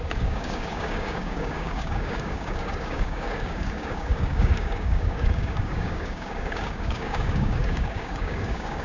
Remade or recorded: remade